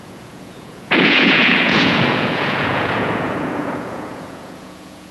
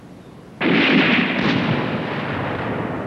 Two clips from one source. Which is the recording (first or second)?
second